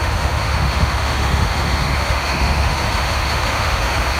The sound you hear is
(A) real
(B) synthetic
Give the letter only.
B